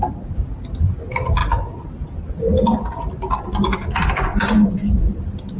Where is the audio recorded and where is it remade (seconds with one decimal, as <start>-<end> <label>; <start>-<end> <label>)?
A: 0.0-4.3 recorded; 4.3-5.1 remade; 5.1-5.6 recorded